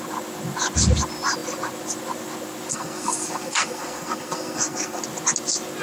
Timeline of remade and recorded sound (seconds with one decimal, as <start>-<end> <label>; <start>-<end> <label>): 0.0-2.7 recorded; 2.7-5.0 remade; 5.0-5.8 recorded